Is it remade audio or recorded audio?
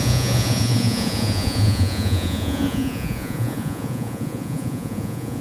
remade